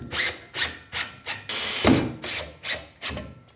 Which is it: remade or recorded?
recorded